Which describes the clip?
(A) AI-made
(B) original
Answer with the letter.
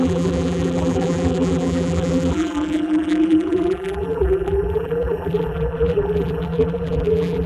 A